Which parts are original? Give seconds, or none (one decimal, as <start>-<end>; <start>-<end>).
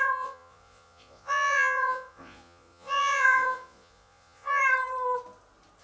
4.6-5.8